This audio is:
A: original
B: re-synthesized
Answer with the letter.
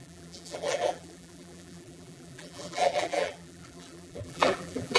B